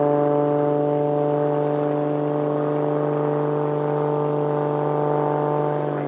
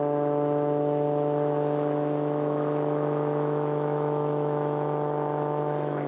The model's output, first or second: second